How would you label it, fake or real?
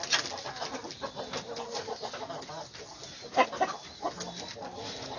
real